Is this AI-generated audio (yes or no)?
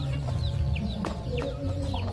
yes